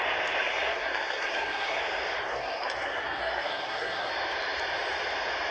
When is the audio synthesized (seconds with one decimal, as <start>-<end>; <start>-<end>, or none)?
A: 0.4-1.8; 2.3-4.1